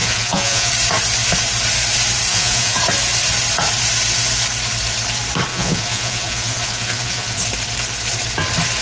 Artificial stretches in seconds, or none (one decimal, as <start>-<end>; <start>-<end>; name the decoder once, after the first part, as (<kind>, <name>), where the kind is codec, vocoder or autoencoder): 0.0-0.7 (vocoder, Vocos); 2.3-2.8; 5.5-7.4